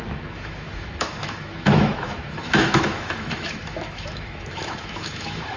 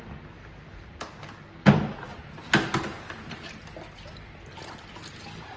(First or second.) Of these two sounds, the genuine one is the second